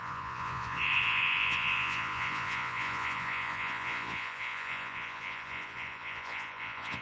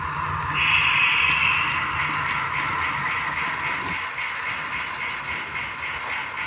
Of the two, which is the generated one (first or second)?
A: first